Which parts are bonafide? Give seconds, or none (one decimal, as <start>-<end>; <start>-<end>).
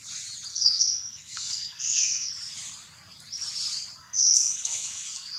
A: 0.0-0.5; 2.3-4.0